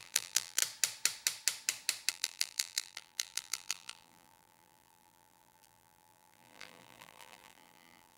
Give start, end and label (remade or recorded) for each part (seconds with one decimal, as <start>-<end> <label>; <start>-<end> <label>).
0.0-0.6 remade; 0.6-2.1 recorded; 2.1-8.2 remade